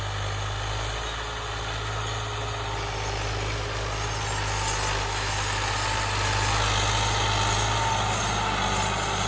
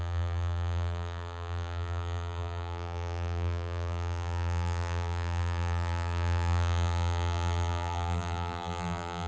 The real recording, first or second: first